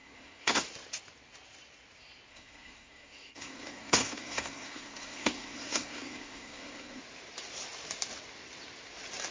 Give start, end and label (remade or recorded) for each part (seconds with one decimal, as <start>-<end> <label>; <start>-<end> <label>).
0.0-0.6 remade; 0.6-2.3 recorded; 2.3-7.0 remade; 7.0-9.3 recorded